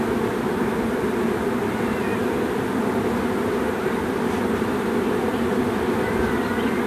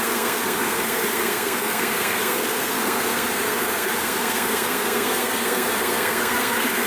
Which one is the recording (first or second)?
first